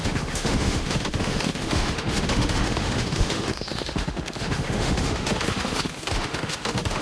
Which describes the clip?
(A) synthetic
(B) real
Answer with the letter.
A